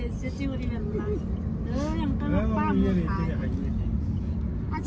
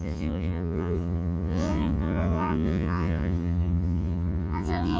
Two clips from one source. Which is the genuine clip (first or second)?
first